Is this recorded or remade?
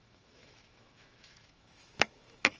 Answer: remade